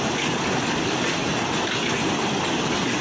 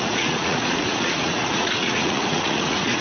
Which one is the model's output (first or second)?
second